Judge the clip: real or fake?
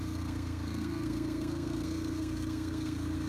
fake